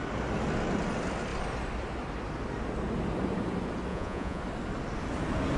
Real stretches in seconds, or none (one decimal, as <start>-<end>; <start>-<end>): 0.0-3.9; 4.4-5.6